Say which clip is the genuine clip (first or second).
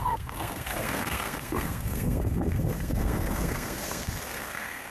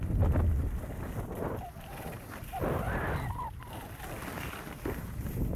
second